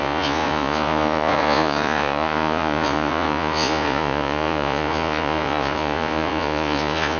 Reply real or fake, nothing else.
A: fake